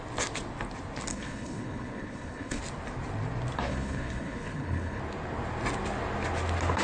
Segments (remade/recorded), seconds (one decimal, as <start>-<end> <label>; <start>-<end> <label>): 0.0-1.1 recorded; 1.1-2.6 remade; 2.6-3.7 recorded; 3.7-5.0 remade; 5.0-6.8 recorded